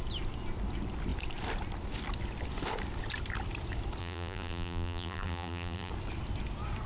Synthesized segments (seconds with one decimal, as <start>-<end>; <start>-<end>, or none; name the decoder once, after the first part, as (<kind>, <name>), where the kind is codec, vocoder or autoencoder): 4.0-5.9 (vocoder, BigVGAN v2)